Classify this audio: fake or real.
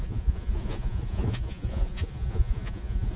fake